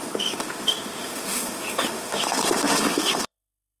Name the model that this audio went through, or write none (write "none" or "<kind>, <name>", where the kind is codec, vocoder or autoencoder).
autoencoder, DAC-VAE